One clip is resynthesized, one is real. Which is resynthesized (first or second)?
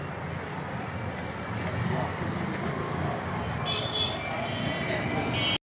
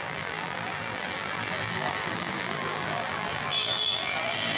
second